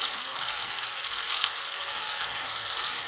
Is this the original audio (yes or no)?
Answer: no